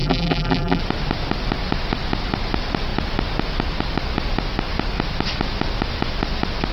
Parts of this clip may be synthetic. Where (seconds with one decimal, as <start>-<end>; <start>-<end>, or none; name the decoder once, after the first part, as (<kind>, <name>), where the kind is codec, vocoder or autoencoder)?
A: 0.0-0.8 (vocoder, BigVGAN v2)